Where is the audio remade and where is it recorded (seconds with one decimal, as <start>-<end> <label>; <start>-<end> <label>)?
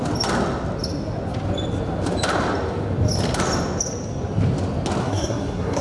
0.0-5.0 recorded; 5.0-5.8 remade